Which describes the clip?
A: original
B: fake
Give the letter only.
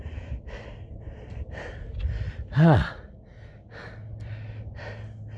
A